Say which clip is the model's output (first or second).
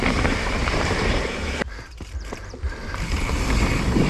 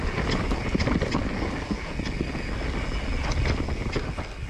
first